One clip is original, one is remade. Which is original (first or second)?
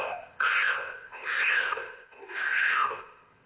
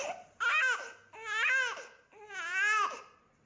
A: second